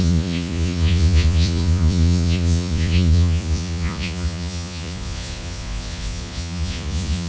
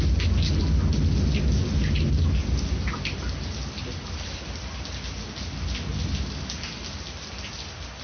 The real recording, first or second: second